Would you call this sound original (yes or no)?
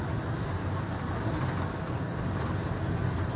yes